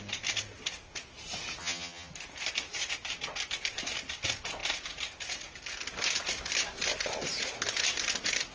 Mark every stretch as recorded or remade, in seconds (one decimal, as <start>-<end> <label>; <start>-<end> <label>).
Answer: 0.0-1.6 recorded; 1.6-2.1 remade; 2.1-8.5 recorded